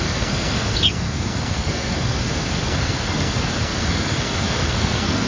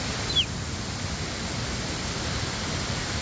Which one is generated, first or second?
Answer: first